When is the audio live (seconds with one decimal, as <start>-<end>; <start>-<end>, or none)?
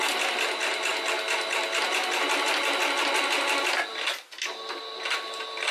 0.0-5.7